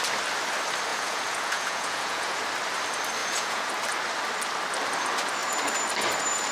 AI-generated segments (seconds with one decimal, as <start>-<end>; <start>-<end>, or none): 0.9-2.4; 3.2-3.7